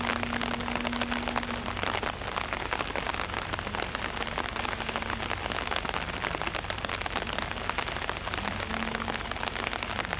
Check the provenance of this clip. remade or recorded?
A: recorded